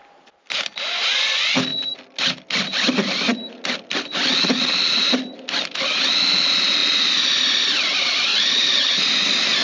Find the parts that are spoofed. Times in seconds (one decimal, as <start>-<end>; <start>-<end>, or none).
8.3-9.0